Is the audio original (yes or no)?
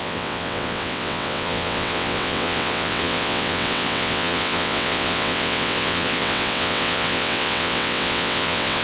no